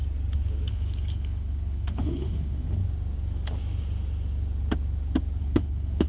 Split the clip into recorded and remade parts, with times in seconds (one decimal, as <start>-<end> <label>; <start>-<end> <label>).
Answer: 0.0-0.7 recorded; 0.7-2.8 remade; 2.8-5.4 recorded; 5.4-6.1 remade